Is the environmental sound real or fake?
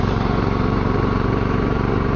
fake